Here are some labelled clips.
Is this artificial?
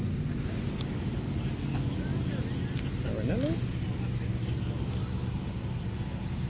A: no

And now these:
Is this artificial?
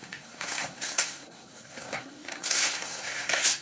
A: yes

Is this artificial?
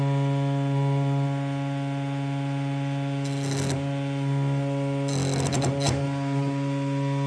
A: no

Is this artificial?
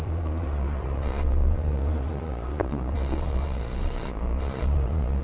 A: yes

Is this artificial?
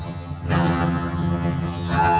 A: yes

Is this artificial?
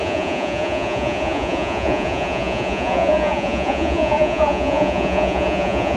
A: yes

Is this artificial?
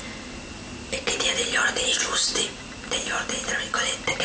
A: no